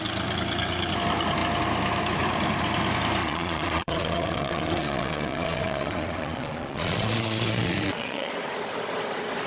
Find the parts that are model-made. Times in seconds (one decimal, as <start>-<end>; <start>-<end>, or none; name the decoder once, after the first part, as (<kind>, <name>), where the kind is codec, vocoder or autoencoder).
3.2-8.3 (vocoder, Vocos)